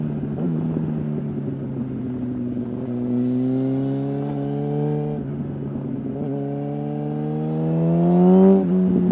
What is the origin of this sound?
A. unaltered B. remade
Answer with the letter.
A